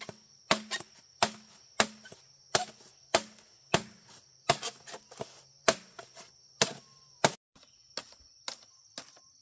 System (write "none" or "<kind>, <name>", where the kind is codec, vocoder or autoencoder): none